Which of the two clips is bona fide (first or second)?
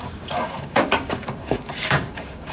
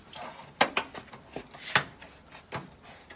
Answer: second